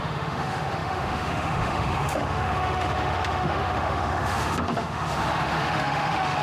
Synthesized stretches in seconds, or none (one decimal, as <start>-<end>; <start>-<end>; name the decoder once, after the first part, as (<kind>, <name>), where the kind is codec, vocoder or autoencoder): 0.0-6.4 (autoencoder, DAC-VAE)